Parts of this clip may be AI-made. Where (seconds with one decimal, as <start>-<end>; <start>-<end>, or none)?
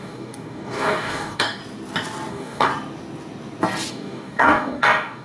0.0-1.6; 2.3-2.7; 3.9-5.2